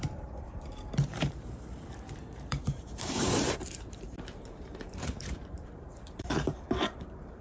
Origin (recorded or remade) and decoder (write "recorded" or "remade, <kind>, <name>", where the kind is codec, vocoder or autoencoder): remade, vocoder, BigVGAN v2